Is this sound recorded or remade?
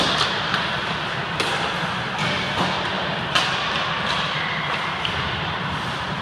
recorded